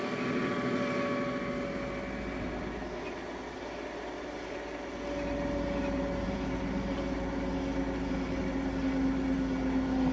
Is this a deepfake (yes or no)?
no